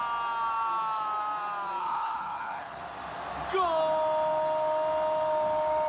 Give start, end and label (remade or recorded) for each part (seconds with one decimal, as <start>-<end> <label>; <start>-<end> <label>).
0.0-1.8 recorded; 1.8-2.8 remade; 2.8-5.9 recorded